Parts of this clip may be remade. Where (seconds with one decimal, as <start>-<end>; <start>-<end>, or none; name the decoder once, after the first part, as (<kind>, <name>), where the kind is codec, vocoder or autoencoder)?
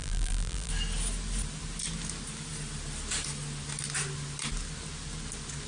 0.0-0.7 (vocoder, BigVGAN v2)